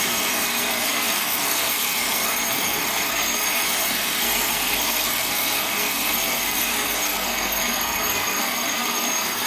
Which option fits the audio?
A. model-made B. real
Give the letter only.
A